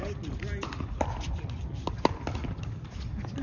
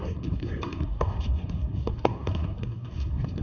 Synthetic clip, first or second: second